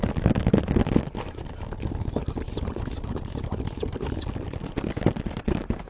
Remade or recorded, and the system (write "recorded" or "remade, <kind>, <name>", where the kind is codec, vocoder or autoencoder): recorded